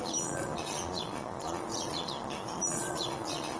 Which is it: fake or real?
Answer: fake